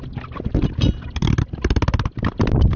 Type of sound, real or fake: real